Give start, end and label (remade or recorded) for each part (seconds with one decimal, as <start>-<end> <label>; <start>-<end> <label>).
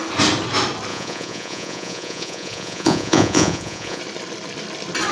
0.0-0.9 recorded; 0.9-4.0 remade; 4.0-5.1 recorded